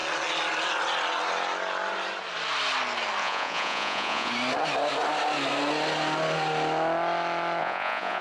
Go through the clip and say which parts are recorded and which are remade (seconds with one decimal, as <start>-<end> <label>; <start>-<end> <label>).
0.0-3.2 recorded; 3.2-4.3 remade; 4.3-7.6 recorded; 7.6-8.2 remade

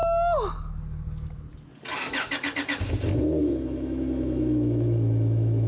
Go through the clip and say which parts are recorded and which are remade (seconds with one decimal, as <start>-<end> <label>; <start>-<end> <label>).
0.0-3.4 recorded; 3.4-5.7 remade

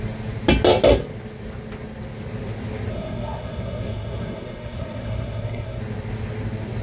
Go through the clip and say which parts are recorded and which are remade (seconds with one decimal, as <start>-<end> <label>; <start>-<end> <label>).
0.0-2.9 recorded; 2.9-5.8 remade; 5.8-6.8 recorded

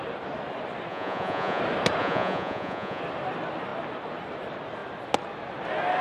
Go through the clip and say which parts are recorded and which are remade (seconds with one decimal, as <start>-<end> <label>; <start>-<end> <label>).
0.0-0.9 recorded; 0.9-1.6 remade; 1.6-2.0 recorded; 2.0-3.0 remade; 3.0-6.0 recorded

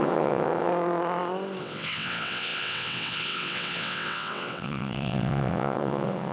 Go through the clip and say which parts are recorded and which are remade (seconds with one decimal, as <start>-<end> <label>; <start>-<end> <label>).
0.0-0.7 remade; 0.7-1.6 recorded; 1.6-6.3 remade

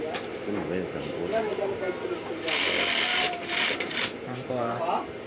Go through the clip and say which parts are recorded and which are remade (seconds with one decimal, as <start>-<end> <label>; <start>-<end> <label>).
0.0-1.5 recorded; 1.5-2.1 remade; 2.1-3.1 recorded; 3.1-4.8 remade; 4.8-5.3 recorded